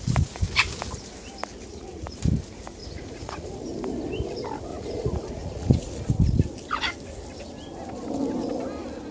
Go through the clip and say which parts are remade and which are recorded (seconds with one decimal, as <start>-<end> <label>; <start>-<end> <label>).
0.0-1.7 recorded; 1.7-2.2 remade; 2.2-2.8 recorded; 2.8-3.5 remade; 3.5-4.7 recorded; 4.7-6.1 remade; 6.1-9.1 recorded